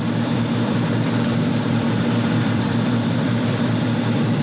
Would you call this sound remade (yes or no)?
yes